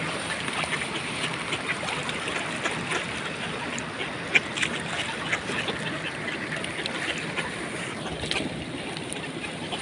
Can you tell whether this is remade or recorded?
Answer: recorded